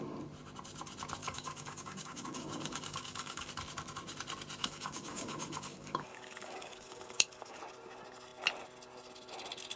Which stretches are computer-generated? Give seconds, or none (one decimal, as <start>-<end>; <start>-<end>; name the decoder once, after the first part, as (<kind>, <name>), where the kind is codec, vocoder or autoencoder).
1.2-3.5 (codec, DAC); 4.6-7.6